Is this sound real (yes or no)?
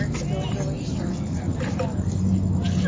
yes